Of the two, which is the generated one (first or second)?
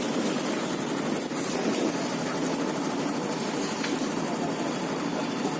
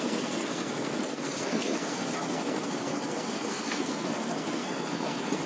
second